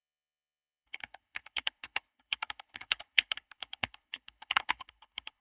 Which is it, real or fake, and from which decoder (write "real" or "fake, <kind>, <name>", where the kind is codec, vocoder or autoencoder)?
fake, codec, HILCodec